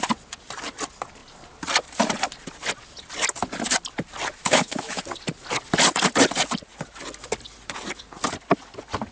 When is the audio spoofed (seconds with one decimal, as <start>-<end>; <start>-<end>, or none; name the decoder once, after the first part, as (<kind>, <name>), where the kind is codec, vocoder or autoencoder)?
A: 4.4-5.0 (autoencoder, DAC-VAE)